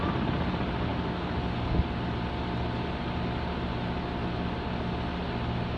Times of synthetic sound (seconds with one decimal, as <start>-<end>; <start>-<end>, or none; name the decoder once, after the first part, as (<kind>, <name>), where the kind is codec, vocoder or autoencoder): none